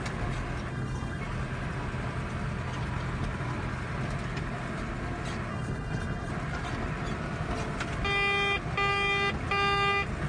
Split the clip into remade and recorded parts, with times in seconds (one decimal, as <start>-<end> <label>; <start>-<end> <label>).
0.0-0.7 recorded; 0.7-1.2 remade; 1.2-5.5 recorded; 5.5-6.3 remade; 6.3-10.3 recorded

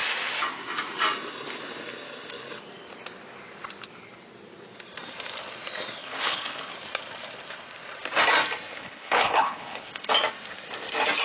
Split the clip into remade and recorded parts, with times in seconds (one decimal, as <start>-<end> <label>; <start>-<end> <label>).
0.0-6.0 recorded; 6.0-6.7 remade; 6.7-8.8 recorded; 8.8-10.1 remade; 10.1-11.2 recorded

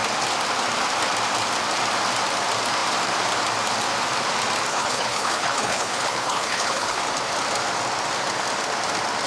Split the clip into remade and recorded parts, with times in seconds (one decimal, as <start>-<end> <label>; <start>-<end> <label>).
0.0-4.7 recorded; 4.7-7.0 remade; 7.0-9.3 recorded

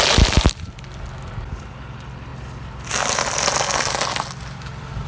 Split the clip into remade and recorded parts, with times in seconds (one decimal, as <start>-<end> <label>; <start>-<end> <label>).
0.0-5.1 recorded

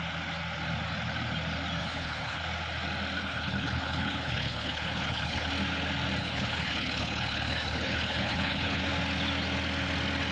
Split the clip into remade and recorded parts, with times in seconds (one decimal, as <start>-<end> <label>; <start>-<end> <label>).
0.0-1.8 recorded; 1.8-2.4 remade; 2.4-3.2 recorded; 3.2-5.5 remade; 5.5-6.2 recorded; 6.2-8.8 remade; 8.8-10.3 recorded

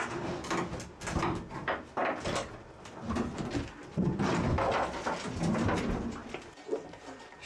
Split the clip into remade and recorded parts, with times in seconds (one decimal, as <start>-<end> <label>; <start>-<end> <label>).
0.0-7.5 recorded